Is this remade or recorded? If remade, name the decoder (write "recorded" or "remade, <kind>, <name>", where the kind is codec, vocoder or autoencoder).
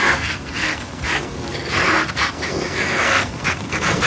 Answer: remade, codec, SNAC